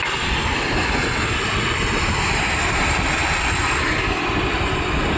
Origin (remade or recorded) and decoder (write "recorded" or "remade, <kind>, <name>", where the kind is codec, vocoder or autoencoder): remade, vocoder, BigVGAN v2